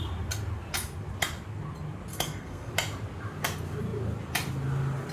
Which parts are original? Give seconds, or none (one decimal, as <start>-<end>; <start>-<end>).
0.0-2.1; 2.7-5.1